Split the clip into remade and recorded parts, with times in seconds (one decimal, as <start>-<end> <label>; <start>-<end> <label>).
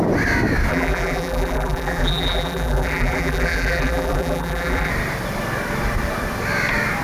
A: 0.0-0.7 recorded; 0.7-4.9 remade; 4.9-7.0 recorded